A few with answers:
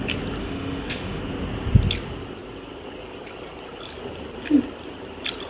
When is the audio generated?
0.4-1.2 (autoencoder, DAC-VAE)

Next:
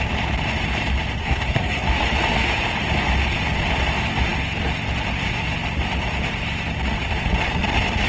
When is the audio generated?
1.2-1.9 (codec, SNAC)

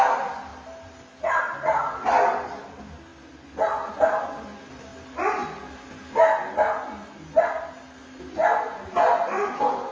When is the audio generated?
none

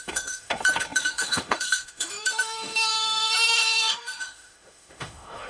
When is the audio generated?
0.0-5.5 (autoencoder, DAC-VAE)

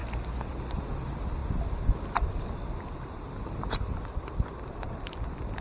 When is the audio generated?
none

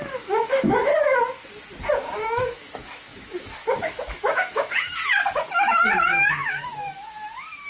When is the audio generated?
0.0-0.9 (autoencoder, DAC-VAE); 1.9-7.7

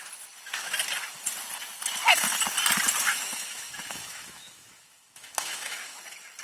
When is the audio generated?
3.1-6.0 (autoencoder, DAC-VAE)